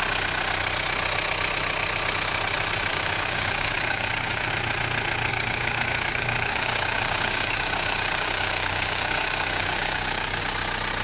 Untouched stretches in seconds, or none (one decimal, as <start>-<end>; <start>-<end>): 0.0-2.9; 4.5-5.3; 10.4-11.0